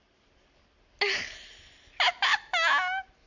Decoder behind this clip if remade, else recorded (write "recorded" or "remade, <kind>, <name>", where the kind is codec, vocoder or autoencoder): recorded